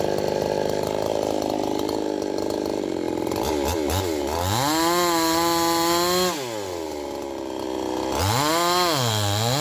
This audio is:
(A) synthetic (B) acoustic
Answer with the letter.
B